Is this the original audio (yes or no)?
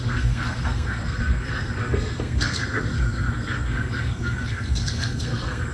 no